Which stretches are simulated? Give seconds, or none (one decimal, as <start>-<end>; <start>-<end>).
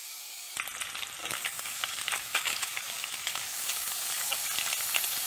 0.0-0.5; 1.2-4.4